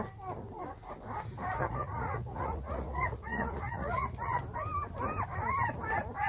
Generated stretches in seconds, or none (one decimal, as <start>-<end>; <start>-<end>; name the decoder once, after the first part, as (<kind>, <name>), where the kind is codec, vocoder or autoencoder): 1.4-4.4 (vocoder, Vocos)